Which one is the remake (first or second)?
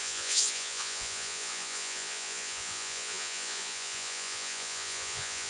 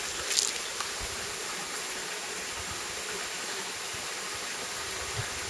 first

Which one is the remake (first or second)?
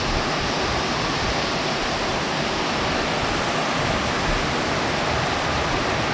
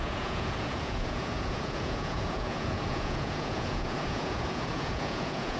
second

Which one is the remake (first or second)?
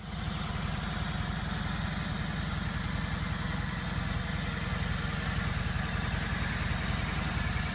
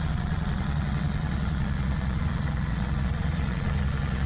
second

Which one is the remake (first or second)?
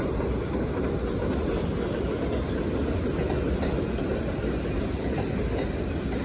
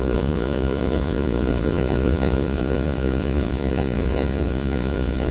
second